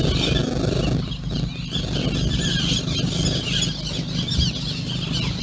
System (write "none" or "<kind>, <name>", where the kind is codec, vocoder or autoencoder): none